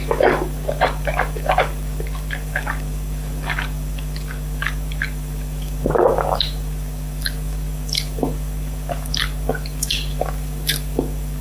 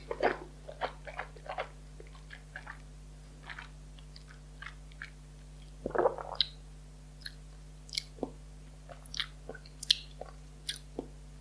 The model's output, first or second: first